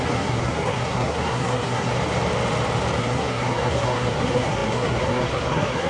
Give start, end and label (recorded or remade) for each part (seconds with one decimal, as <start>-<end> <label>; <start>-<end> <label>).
0.0-1.9 remade; 1.9-3.0 recorded; 3.0-5.9 remade